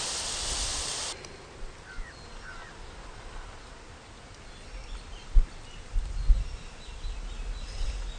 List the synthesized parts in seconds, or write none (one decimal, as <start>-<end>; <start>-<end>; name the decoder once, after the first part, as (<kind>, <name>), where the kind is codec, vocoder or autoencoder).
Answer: none